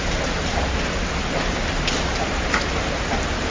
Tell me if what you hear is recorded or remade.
recorded